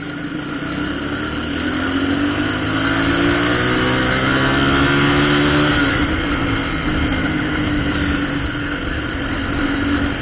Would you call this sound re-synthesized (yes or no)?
no